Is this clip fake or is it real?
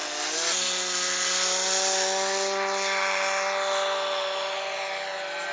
real